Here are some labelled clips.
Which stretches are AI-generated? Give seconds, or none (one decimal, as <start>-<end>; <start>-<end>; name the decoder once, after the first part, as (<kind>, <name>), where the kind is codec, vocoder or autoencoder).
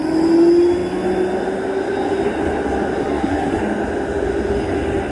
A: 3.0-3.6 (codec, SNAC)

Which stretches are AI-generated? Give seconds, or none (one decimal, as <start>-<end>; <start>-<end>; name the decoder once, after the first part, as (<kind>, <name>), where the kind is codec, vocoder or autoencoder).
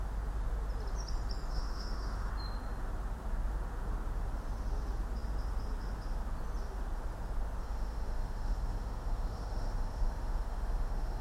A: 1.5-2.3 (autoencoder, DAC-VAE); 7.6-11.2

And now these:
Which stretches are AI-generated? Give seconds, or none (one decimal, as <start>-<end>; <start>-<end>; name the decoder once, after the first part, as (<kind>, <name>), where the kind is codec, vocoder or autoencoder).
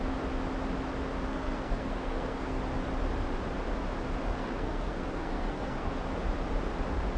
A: 1.3-2.6 (codec, SNAC); 4.3-5.9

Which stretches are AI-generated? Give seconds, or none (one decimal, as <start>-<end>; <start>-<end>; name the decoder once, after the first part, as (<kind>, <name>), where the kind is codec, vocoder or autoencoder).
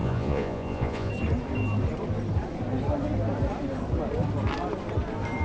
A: 0.0-1.1 (vocoder, Vocos)